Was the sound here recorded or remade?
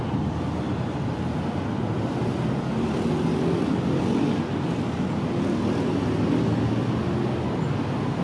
recorded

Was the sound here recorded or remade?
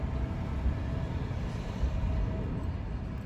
recorded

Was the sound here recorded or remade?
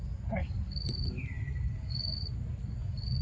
recorded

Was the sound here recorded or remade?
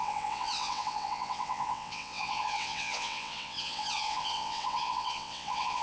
remade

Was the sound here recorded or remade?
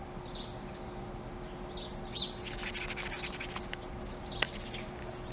recorded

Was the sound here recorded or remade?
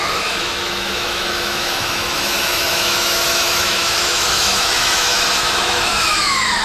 remade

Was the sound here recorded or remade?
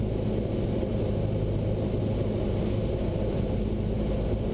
recorded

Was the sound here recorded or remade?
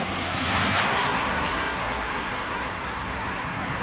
remade